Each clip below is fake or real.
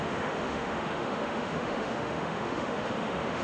fake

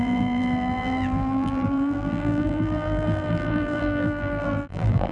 fake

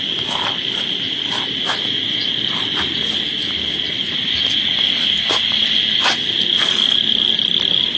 real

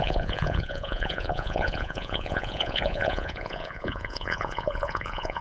fake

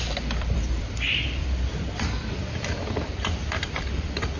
fake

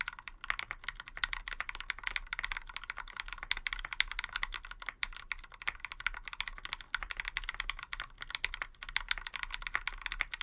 real